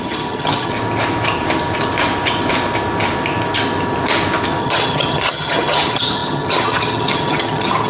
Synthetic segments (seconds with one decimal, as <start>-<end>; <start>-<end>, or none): 0.0-0.7; 4.6-7.9